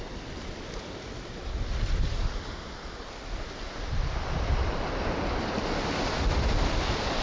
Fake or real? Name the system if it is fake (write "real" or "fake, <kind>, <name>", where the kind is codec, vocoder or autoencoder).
real